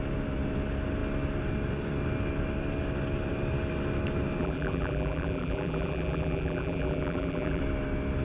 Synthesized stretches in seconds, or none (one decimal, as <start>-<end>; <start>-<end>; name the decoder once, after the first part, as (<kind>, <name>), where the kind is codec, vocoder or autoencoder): 4.4-7.6 (vocoder, BigVGAN v2)